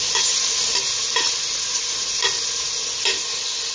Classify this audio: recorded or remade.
recorded